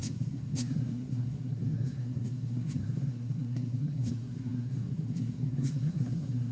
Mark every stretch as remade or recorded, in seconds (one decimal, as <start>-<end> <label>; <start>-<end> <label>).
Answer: 0.0-6.5 remade